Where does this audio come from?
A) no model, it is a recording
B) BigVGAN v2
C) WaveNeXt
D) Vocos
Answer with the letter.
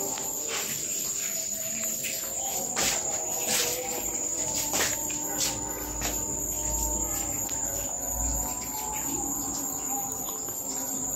A